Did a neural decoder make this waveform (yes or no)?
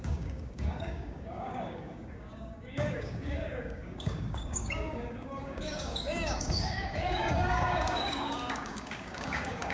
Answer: yes